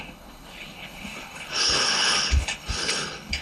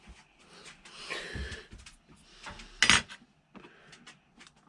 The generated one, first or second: first